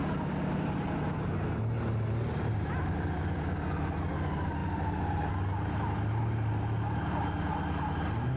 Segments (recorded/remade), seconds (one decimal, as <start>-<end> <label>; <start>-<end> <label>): 0.0-8.4 recorded